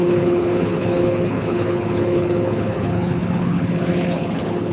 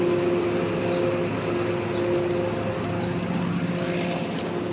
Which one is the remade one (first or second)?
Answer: first